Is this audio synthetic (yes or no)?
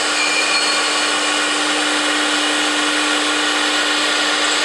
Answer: no